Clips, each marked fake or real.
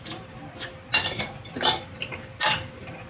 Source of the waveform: real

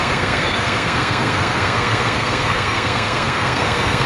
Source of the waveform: fake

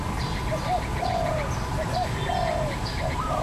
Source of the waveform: real